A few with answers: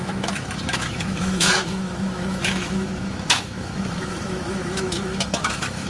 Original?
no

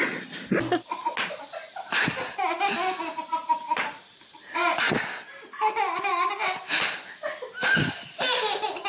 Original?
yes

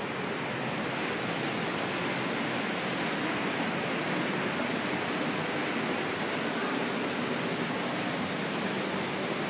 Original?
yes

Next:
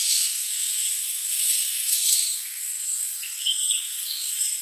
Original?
no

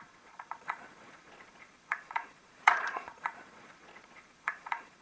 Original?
no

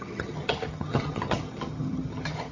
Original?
no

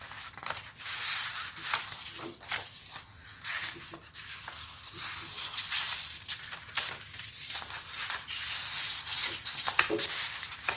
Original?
no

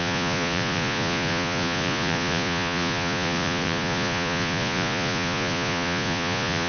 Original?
no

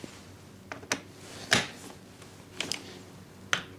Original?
yes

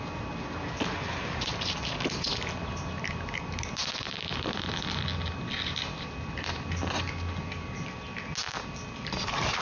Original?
yes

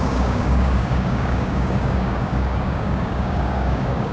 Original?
no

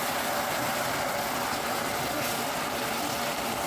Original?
yes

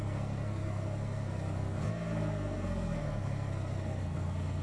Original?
no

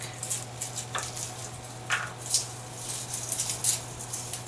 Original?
yes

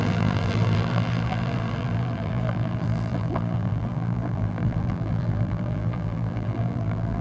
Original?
no